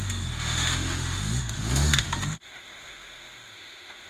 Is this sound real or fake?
fake